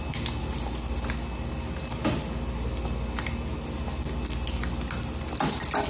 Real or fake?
real